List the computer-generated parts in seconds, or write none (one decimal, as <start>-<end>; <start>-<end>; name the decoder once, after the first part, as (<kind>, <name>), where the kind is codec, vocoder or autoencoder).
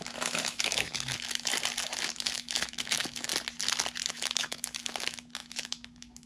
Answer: 0.0-1.5 (autoencoder, DAC-VAE); 2.0-3.3; 4.1-6.3